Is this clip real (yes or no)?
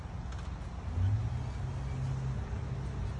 yes